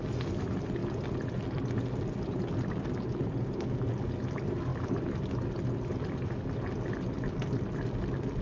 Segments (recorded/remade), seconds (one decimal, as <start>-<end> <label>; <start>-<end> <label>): 0.0-8.4 recorded